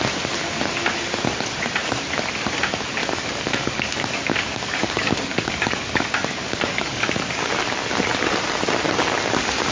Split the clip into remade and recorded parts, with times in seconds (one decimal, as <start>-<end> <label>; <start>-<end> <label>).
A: 0.0-3.0 recorded; 3.0-7.5 remade; 7.5-9.7 recorded